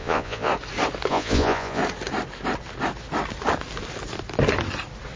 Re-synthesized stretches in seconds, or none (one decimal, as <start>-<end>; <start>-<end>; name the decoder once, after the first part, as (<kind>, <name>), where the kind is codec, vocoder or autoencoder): 0.0-0.5 (vocoder, Vocos); 1.1-1.8